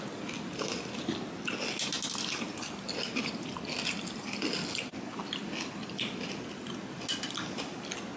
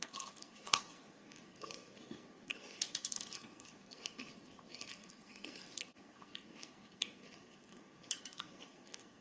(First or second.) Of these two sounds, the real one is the first